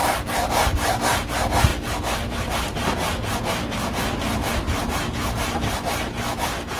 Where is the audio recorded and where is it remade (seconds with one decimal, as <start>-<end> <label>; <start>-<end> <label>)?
0.0-0.6 remade; 0.6-6.8 recorded